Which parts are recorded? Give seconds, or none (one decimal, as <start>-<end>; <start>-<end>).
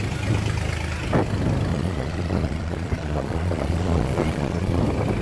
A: 0.0-1.7; 4.8-5.2